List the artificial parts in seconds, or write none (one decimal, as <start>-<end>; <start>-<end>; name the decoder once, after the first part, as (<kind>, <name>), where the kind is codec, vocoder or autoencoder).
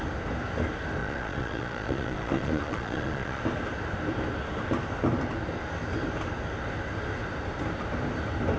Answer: 1.0-3.4 (vocoder, Vocos)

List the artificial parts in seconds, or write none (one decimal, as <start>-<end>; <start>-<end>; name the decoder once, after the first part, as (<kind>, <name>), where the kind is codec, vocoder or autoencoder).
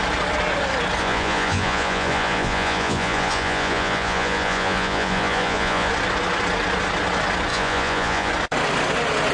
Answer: 1.0-5.9 (vocoder, Vocos); 7.5-8.3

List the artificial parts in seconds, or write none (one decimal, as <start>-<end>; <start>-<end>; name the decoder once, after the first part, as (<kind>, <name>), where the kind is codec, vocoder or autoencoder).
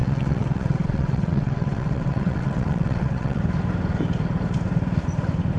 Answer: 0.0-3.4 (vocoder, WaveNeXt)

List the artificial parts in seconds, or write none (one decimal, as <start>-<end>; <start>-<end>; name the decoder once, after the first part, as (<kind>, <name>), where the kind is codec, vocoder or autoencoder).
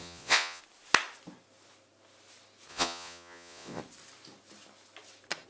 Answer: 0.0-0.6 (vocoder, Vocos); 2.7-3.8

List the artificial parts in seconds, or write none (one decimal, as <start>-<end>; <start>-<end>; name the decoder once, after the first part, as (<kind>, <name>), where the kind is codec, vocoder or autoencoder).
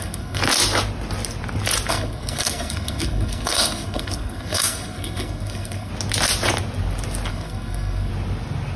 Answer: 0.0-0.4 (codec, SNAC); 1.9-5.9; 7.3-8.1